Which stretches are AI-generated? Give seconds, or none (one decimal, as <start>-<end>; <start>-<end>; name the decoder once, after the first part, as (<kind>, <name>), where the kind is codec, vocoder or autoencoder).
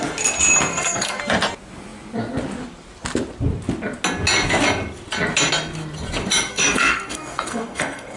0.7-1.2 (codec, SNAC); 6.5-8.2